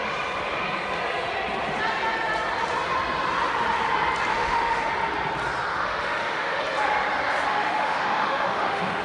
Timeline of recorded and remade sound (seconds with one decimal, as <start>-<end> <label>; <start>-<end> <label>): 0.0-4.3 recorded; 4.3-4.9 remade; 4.9-5.7 recorded; 5.7-6.6 remade; 6.6-7.5 recorded; 7.5-9.0 remade